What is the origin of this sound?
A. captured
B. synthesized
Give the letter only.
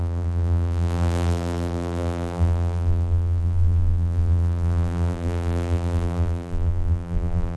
B